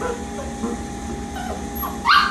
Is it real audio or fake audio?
real